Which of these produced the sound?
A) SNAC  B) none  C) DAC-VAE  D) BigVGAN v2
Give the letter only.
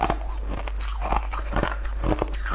B